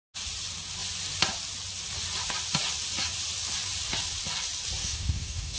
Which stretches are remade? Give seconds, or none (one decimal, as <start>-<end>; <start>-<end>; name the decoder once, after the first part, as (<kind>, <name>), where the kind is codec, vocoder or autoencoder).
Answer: 4.8-5.6 (codec, DAC)